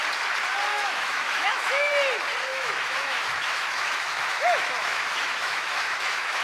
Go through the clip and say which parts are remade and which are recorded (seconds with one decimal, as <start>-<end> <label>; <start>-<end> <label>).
0.0-0.7 recorded; 0.7-1.9 remade; 1.9-2.5 recorded; 2.5-6.4 remade